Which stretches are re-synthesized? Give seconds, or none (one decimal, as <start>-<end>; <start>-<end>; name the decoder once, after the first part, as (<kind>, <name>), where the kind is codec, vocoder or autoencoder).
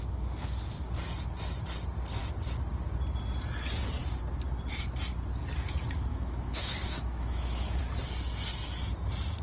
6.1-7.8 (autoencoder, DAC-VAE)